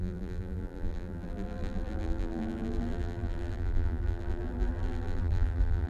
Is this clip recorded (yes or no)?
no